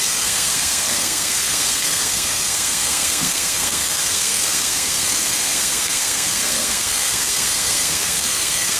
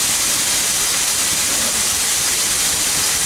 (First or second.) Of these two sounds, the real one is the second